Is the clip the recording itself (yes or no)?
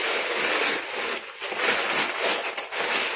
yes